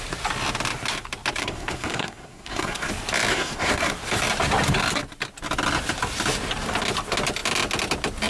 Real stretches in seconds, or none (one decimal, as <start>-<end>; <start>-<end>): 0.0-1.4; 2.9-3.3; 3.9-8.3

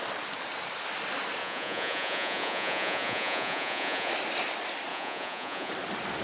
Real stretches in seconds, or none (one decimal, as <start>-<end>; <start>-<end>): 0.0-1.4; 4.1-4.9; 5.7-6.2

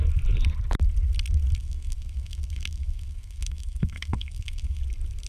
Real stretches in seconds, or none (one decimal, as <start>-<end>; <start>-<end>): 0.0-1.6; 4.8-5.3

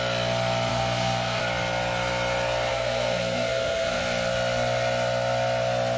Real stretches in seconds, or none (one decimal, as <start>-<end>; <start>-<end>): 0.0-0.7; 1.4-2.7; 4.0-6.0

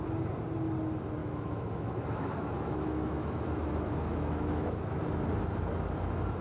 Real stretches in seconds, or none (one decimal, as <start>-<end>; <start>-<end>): 0.0-1.2; 5.0-6.4

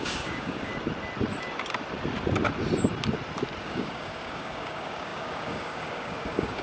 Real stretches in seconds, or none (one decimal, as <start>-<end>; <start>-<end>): 0.7-3.6

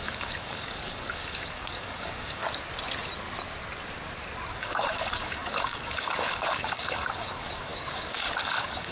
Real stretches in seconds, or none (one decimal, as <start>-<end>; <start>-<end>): 2.4-4.6